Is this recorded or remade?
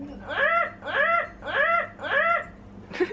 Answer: recorded